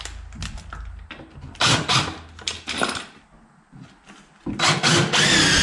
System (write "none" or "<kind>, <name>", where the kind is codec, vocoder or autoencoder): none